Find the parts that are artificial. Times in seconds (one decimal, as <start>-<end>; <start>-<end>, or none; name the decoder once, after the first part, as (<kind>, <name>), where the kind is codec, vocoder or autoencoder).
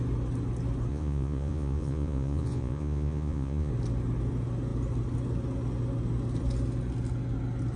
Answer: 0.9-3.7 (vocoder, Vocos)